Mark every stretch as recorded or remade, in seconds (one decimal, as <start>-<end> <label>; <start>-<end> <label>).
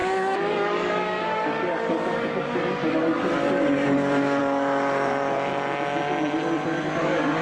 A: 0.0-5.5 remade; 5.5-7.0 recorded; 7.0-7.4 remade